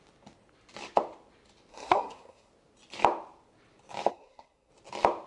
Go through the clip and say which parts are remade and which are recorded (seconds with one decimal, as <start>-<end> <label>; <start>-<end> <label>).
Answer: 0.0-1.7 recorded; 1.7-2.5 remade; 2.5-4.1 recorded; 4.1-4.7 remade; 4.7-5.3 recorded